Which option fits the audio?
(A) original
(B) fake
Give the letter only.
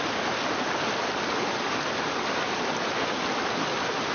A